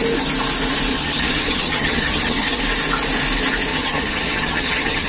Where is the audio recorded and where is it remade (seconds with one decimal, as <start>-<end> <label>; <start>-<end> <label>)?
0.0-0.9 recorded; 0.9-2.6 remade; 2.6-3.7 recorded; 3.7-5.1 remade